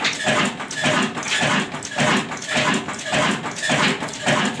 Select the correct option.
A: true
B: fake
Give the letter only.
A